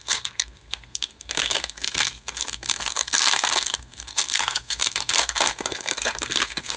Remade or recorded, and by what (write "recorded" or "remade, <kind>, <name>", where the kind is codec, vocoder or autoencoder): remade, codec, SNAC